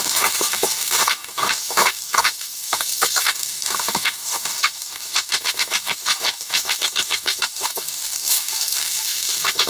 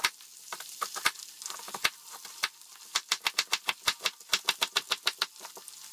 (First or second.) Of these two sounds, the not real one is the first